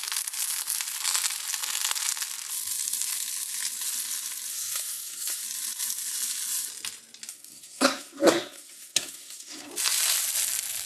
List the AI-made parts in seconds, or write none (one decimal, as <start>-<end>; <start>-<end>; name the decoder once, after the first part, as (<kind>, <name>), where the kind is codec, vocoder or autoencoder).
4.5-5.4 (codec, SNAC); 7.3-9.7

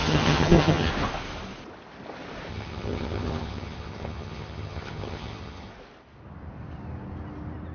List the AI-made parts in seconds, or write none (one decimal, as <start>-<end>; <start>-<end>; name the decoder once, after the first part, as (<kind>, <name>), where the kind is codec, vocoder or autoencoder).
0.0-0.9 (vocoder, HiFi-GAN); 2.5-5.7

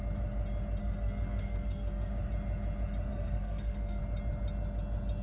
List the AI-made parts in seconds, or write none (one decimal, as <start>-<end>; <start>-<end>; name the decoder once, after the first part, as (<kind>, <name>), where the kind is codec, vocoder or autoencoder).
0.8-2.1 (codec, SNAC); 3.1-4.0

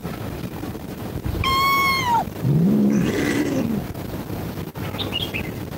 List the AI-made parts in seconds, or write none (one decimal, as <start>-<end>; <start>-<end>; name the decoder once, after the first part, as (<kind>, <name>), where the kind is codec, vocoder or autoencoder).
0.0-1.3 (vocoder, BigVGAN v2)

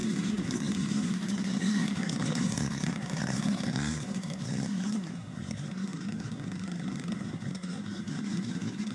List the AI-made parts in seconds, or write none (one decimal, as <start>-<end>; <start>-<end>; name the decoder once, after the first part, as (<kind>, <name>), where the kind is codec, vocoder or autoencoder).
0.0-8.9 (codec, SNAC)

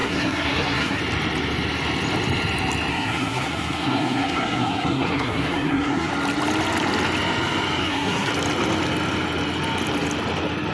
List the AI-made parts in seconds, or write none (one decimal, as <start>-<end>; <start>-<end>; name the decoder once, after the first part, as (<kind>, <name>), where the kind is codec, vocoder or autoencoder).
0.0-1.0 (codec, SNAC); 2.9-6.1; 7.8-8.3

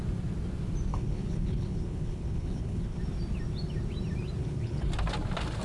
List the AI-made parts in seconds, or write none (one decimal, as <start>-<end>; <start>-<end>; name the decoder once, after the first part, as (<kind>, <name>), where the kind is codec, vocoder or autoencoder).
0.9-3.0 (codec, HILCodec); 4.4-4.9